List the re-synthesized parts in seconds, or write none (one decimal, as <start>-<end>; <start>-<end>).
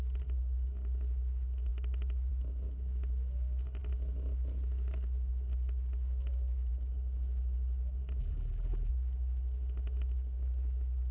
8.2-8.9